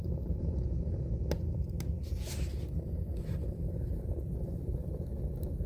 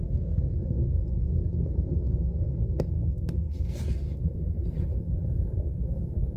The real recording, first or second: first